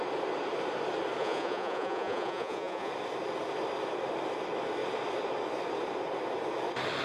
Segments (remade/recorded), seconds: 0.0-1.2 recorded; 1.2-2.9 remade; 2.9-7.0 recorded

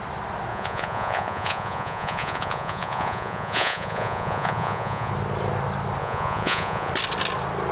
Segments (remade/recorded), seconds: 0.0-0.5 recorded; 0.5-5.1 remade; 5.1-6.0 recorded; 6.0-6.9 remade; 6.9-7.7 recorded

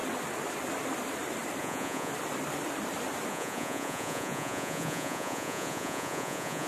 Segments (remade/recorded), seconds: 0.0-1.6 recorded; 1.6-2.1 remade; 2.1-3.3 recorded; 3.3-6.7 remade